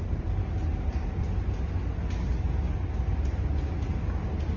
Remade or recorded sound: recorded